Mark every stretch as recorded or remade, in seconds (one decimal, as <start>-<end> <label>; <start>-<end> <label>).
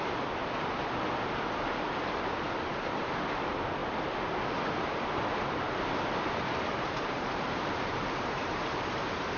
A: 0.0-0.4 remade; 0.4-1.6 recorded; 1.6-3.8 remade; 3.8-6.2 recorded; 6.2-9.4 remade